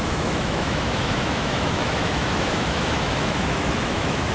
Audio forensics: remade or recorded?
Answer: remade